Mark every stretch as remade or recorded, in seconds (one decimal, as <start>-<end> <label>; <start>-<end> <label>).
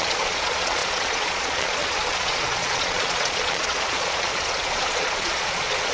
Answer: 0.0-5.9 remade